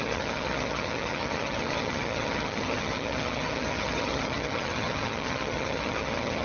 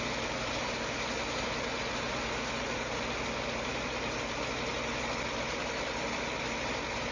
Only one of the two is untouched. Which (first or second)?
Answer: second